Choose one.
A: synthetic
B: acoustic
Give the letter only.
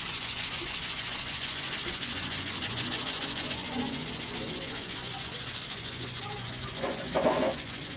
A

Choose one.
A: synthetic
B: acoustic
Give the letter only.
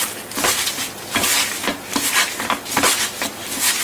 B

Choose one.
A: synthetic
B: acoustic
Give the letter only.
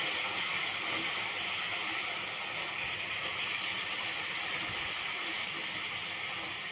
B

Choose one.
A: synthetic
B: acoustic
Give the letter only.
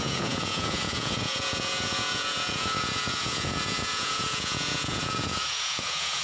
A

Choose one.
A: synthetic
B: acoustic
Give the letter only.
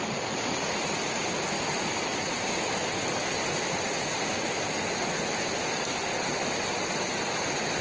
B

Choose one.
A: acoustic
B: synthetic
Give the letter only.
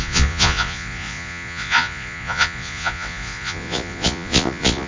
B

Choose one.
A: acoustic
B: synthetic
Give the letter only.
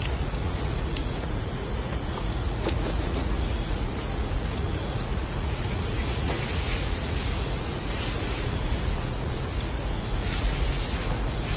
B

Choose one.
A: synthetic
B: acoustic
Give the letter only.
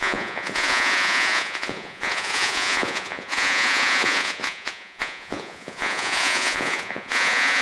A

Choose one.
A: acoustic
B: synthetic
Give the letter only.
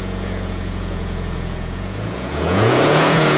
B